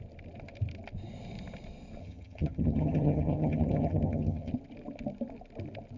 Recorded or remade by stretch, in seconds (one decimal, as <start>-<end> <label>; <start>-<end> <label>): 0.0-2.0 recorded; 2.0-4.5 remade; 4.5-6.0 recorded